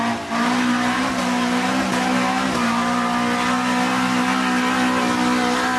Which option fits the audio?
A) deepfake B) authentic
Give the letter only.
B